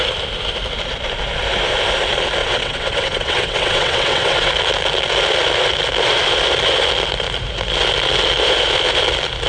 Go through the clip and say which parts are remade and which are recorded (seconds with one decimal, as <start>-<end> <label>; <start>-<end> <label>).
0.0-2.4 recorded; 2.4-4.5 remade; 4.5-9.5 recorded